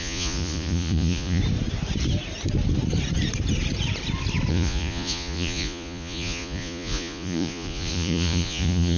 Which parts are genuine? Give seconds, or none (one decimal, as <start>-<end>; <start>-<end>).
1.4-4.5